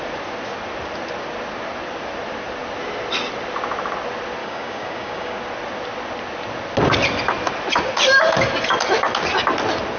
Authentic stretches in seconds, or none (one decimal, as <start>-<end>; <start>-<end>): 0.0-4.4; 5.4-10.0